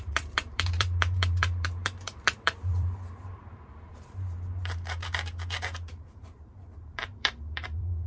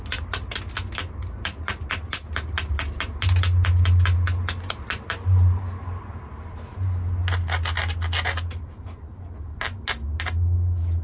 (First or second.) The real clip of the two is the second